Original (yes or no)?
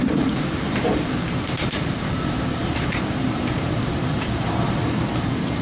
no